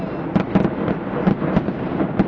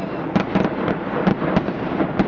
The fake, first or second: second